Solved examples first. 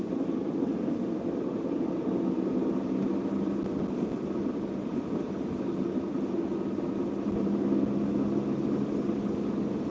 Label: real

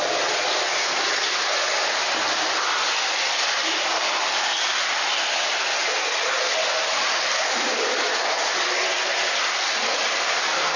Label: real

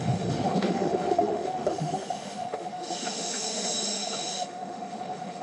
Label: fake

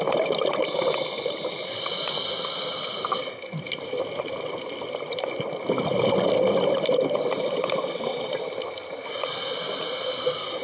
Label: real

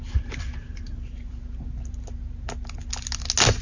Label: real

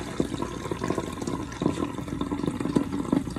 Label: real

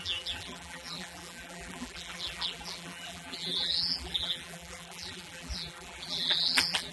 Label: fake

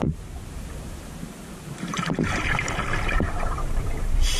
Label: fake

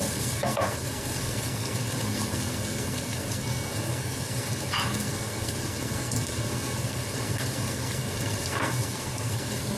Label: fake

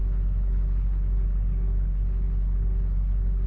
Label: fake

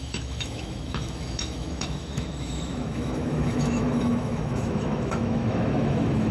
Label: fake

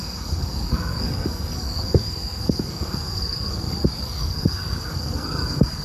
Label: fake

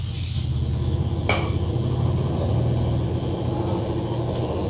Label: real